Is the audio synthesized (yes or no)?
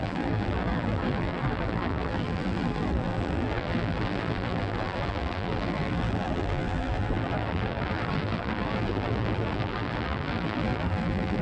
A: yes